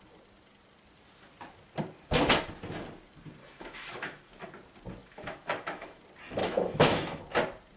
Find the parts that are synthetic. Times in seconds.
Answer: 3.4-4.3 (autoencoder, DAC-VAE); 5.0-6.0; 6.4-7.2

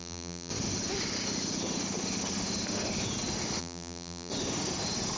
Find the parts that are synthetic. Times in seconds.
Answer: 0.0-0.5 (vocoder, BigVGAN v2); 3.6-4.3

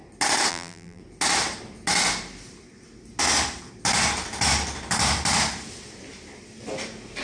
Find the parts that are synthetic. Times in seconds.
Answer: 0.5-1.0 (vocoder, BigVGAN v2)

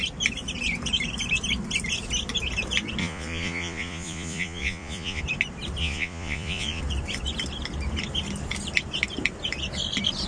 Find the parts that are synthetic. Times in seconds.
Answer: 3.0-5.2 (vocoder, Vocos); 5.8-6.8

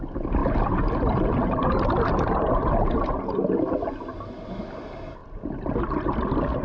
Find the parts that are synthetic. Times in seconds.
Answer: none

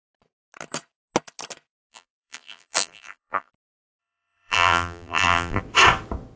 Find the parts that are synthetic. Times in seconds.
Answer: 1.9-3.5 (vocoder, BigVGAN v2); 4.0-5.6

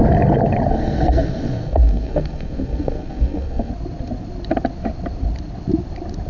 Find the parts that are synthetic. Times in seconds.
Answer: 0.7-3.7 (codec, SNAC)

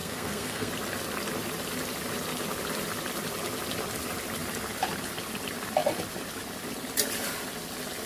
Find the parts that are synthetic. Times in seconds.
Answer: 0.0-0.7 (codec, SNAC)